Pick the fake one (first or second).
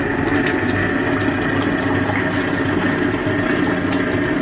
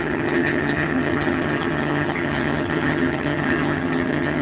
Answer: second